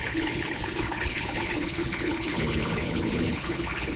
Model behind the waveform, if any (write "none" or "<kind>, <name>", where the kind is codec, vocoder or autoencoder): codec, HILCodec